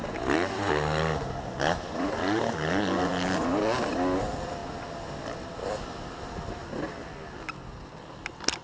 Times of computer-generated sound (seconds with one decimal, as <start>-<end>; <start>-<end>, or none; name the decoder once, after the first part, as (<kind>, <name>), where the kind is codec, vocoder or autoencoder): none